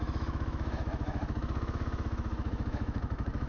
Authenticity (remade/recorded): remade